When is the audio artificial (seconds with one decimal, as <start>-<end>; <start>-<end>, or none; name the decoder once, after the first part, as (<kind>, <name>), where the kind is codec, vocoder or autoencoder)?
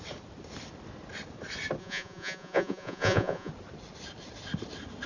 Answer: 1.8-3.5 (vocoder, Vocos)